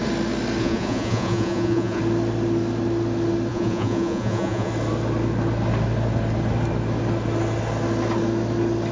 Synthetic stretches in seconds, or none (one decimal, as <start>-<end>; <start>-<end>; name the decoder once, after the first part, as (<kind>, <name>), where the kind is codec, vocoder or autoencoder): 0.6-2.0 (vocoder, Vocos); 3.5-4.7